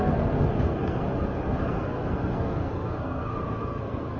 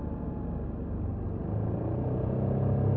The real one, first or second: second